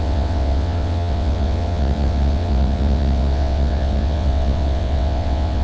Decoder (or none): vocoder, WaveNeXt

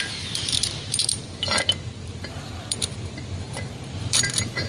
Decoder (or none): vocoder, BigVGAN v2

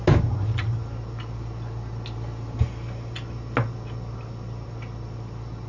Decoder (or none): none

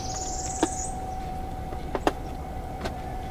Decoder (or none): vocoder, BigVGAN v2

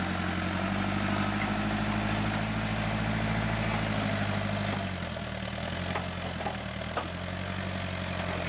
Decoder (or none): none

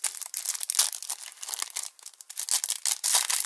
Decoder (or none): none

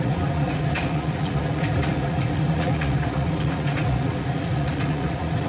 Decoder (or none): vocoder, Vocos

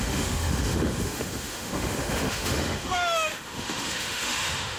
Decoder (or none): autoencoder, DAC-VAE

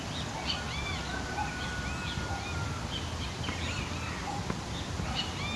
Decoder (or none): none